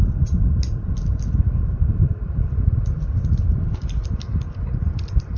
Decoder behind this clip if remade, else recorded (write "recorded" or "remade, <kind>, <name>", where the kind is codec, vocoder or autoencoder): recorded